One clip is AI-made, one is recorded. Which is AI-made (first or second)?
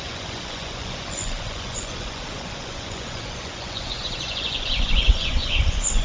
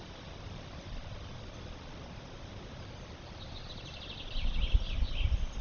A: first